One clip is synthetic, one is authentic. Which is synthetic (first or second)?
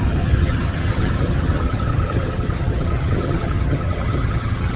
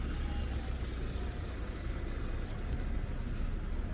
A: first